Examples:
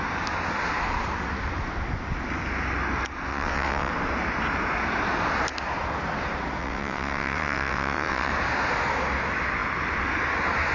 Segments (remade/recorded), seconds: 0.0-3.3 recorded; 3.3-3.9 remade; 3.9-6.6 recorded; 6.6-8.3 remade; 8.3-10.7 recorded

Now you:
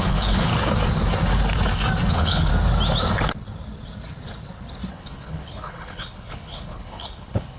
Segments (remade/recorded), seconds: 0.0-0.5 remade; 0.5-2.1 recorded; 2.1-2.5 remade; 2.5-4.9 recorded; 4.9-7.6 remade